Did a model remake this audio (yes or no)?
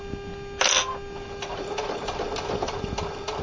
no